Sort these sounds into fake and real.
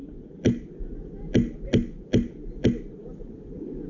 real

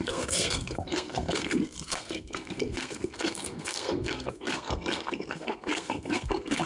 fake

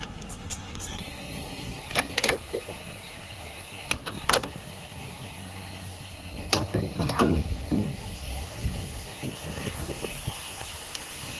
fake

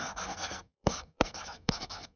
fake